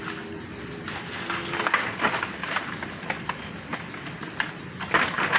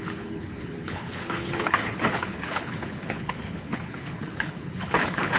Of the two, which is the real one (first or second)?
first